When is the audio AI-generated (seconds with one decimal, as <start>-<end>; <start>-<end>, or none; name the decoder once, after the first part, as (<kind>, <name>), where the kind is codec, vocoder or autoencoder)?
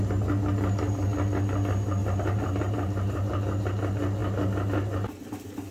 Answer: 2.0-3.3 (vocoder, BigVGAN v2)